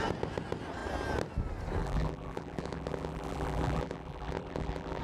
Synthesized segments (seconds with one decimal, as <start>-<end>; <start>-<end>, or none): 1.8-5.0